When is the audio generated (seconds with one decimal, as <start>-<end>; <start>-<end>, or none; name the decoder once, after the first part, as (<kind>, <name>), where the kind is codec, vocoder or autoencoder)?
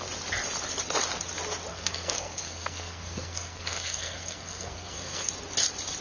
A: 1.7-5.3 (codec, SNAC)